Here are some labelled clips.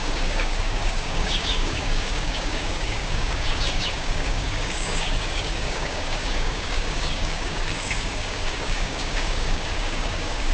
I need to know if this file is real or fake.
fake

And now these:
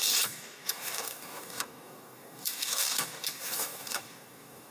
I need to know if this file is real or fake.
fake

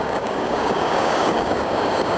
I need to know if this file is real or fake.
fake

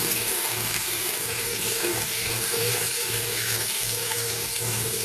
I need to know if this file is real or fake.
fake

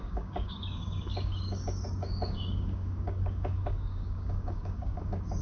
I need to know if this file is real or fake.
fake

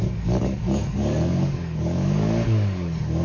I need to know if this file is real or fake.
fake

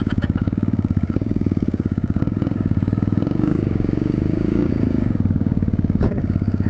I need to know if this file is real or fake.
fake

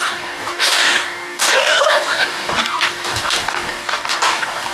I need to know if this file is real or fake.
fake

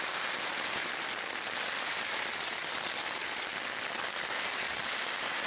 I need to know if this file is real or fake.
real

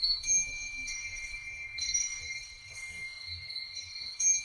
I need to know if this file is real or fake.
fake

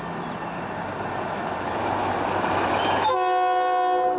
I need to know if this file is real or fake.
real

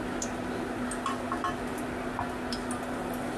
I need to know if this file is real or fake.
real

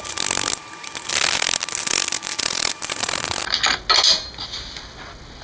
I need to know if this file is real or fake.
real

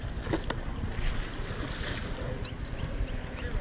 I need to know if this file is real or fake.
real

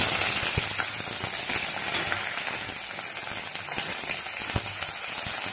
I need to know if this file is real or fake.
real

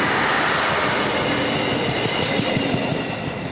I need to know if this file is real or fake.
real